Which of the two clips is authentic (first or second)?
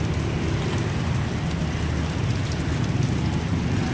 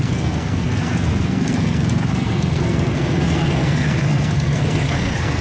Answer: first